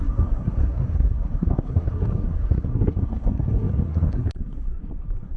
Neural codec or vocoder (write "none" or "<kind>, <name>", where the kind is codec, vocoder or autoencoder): codec, SNAC